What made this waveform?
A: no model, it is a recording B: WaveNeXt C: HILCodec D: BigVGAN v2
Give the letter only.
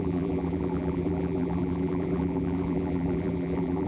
D